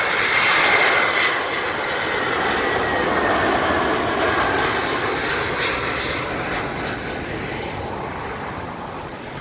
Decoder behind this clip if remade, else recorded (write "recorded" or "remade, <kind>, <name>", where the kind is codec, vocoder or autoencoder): recorded